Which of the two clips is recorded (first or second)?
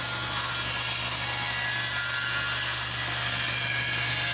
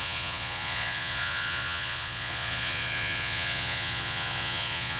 first